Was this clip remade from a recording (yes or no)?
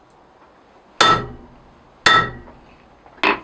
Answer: no